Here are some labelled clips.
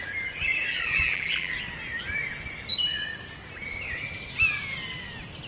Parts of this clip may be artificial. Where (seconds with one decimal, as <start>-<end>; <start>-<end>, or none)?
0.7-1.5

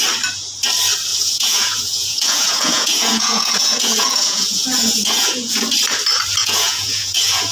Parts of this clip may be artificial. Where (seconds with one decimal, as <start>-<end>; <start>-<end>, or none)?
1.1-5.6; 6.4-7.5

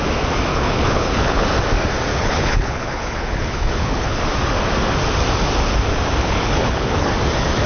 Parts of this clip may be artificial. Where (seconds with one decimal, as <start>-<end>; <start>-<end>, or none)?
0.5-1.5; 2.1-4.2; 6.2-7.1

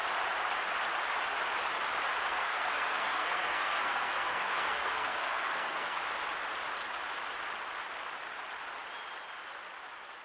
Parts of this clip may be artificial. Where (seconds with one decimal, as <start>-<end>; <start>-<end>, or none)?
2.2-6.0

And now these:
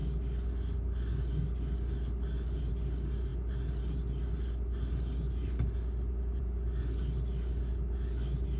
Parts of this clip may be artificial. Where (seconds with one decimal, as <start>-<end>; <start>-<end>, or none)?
none

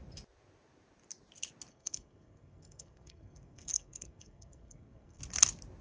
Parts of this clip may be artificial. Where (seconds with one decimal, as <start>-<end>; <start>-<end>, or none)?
1.7-5.2

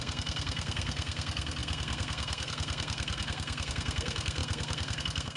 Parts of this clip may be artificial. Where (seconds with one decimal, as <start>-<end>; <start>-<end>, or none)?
0.0-5.4

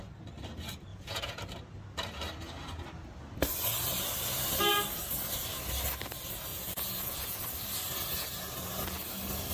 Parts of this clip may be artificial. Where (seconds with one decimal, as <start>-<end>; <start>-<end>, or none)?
0.9-1.4; 6.5-7.4